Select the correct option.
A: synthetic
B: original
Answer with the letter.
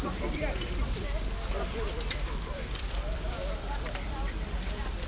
A